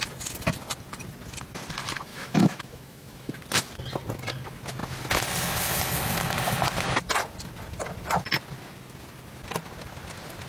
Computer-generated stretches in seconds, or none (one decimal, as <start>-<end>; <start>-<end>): 2.1-3.3